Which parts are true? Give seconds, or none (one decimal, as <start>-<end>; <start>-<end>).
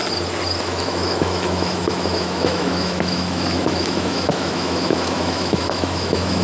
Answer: 0.0-0.6